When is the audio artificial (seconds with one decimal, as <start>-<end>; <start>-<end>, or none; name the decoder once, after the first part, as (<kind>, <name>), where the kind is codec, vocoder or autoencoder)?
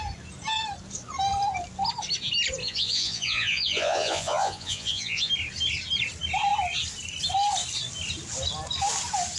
2.6-5.3 (vocoder, Vocos)